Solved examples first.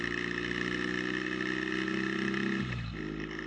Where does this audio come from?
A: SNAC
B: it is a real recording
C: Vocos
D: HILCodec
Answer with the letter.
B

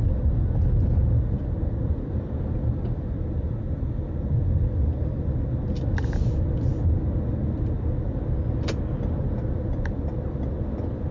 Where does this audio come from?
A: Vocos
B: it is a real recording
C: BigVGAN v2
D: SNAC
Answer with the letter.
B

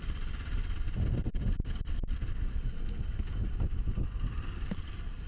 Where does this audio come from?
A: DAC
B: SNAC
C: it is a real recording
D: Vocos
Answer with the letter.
C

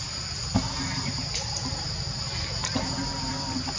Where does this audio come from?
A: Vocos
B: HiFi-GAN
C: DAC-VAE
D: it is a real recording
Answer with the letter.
D